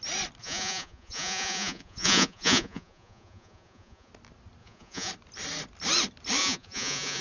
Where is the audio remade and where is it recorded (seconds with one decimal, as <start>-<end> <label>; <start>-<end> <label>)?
0.0-0.4 recorded; 0.4-4.1 remade; 4.1-4.6 recorded; 4.6-5.1 remade; 5.1-6.4 recorded; 6.4-7.2 remade